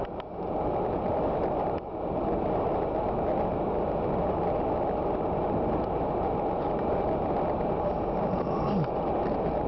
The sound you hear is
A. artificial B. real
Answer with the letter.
B